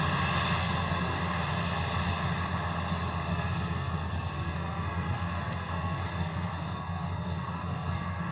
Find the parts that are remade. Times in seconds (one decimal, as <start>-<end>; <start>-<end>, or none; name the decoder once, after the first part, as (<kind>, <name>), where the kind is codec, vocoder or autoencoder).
0.6-1.2 (codec, SNAC); 3.3-8.3